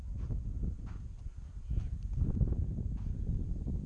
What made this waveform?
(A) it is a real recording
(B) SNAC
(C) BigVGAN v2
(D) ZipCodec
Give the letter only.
A